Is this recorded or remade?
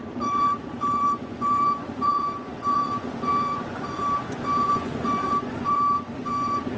remade